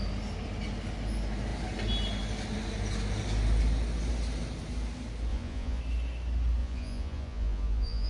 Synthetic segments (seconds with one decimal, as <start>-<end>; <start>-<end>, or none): 5.3-5.8; 6.6-8.1